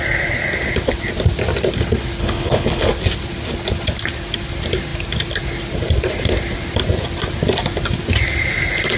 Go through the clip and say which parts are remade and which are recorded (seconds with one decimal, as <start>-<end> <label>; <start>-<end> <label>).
0.0-2.2 recorded; 2.2-2.9 remade; 2.9-9.0 recorded